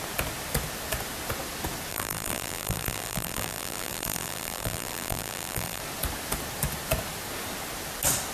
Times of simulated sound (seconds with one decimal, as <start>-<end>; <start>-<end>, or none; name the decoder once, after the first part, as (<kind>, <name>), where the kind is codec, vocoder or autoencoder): 1.9-5.8 (vocoder, BigVGAN v2)